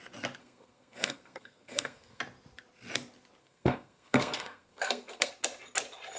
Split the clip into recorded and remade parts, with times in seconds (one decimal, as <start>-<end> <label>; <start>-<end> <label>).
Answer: 0.0-0.4 recorded; 0.4-2.2 remade; 2.2-3.4 recorded; 3.4-5.3 remade; 5.3-6.2 recorded